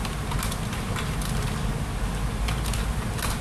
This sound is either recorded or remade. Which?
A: recorded